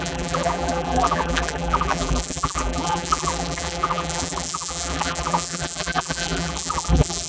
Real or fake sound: fake